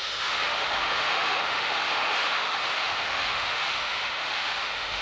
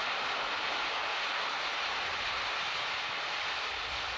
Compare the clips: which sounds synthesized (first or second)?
first